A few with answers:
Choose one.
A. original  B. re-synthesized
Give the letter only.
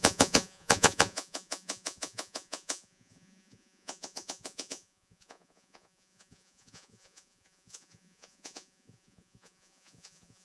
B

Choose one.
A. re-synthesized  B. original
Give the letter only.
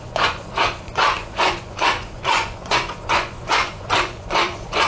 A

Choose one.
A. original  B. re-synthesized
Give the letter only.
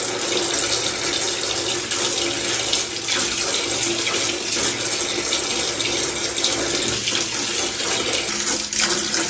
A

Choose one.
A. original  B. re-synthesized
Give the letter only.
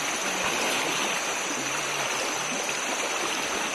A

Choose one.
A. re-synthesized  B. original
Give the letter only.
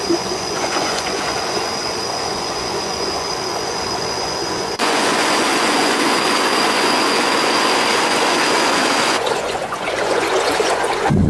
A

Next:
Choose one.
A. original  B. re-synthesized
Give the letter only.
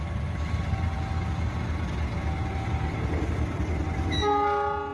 A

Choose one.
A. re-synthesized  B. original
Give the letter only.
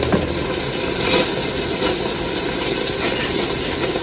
B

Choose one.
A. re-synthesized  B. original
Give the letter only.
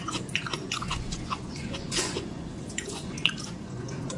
A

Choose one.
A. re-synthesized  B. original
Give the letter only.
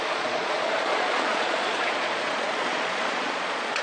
A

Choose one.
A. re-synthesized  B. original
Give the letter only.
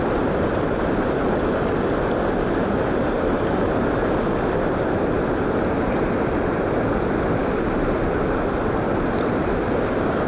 B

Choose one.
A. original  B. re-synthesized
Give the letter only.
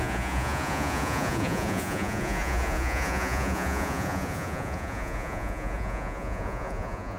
B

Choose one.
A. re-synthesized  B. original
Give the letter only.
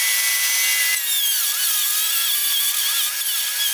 B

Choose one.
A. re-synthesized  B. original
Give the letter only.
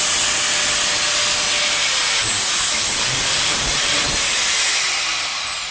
B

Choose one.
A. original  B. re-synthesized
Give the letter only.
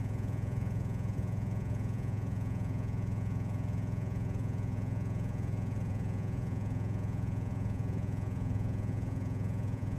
B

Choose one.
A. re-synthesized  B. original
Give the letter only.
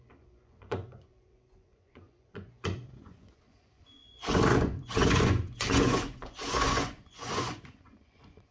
A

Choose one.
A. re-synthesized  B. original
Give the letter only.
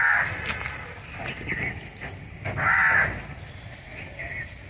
B